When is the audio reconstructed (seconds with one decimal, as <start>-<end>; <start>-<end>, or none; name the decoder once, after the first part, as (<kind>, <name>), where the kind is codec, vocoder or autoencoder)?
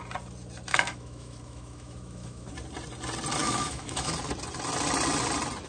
0.7-2.5 (autoencoder, DAC-VAE); 3.4-4.1